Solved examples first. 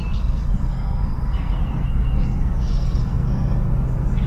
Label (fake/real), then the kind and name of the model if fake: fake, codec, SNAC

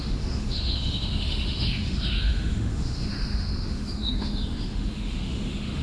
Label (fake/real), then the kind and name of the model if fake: fake, autoencoder, DAC-VAE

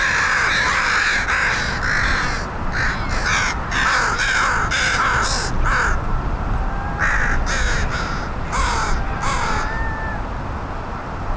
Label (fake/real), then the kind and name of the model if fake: real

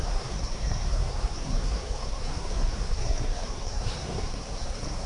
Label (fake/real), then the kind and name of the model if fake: fake, codec, SNAC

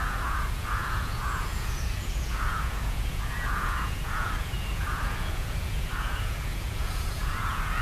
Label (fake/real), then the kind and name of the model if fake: fake, vocoder, Vocos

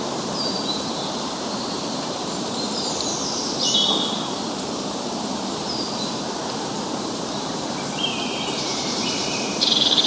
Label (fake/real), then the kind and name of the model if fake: fake, vocoder, BigVGAN v2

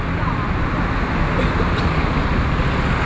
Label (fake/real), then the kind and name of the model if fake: real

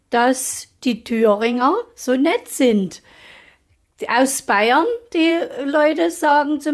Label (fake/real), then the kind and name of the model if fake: fake, vocoder, Vocos